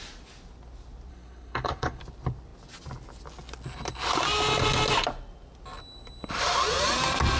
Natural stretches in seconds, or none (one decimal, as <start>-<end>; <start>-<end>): 0.0-1.1; 2.0-7.4